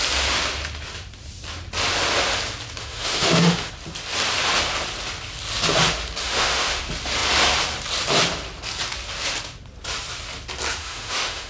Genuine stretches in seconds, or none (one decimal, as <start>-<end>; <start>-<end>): 0.0-2.8; 3.7-6.2; 6.8-10.8